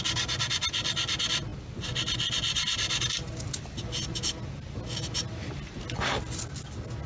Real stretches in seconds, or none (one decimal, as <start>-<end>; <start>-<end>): 0.0-7.1